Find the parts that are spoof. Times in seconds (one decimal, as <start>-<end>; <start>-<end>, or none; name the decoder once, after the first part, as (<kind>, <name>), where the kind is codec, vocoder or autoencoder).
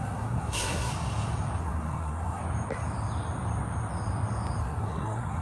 0.0-0.9 (codec, SNAC); 1.6-2.4; 4.6-5.4